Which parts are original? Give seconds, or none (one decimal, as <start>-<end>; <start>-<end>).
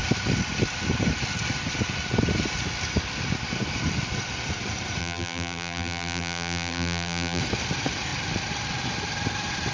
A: 0.0-5.0; 7.4-9.7